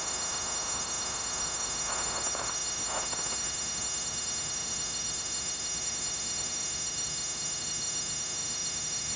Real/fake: fake